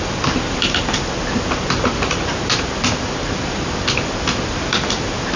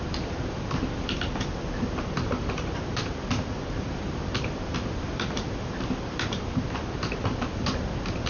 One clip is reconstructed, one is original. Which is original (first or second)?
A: first